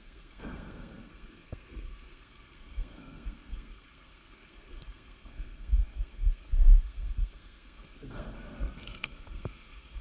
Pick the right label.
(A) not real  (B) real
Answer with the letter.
A